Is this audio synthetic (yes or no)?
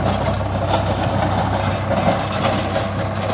no